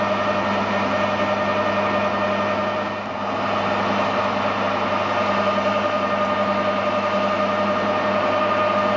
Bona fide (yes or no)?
yes